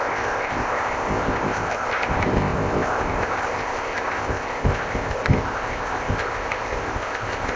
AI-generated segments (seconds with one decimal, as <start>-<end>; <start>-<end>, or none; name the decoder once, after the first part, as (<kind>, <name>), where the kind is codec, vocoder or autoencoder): 0.0-7.6 (codec, ZipCodec)